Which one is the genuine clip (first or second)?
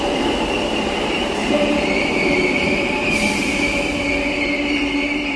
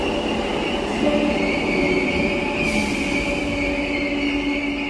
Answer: second